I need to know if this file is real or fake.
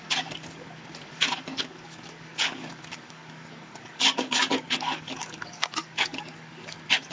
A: fake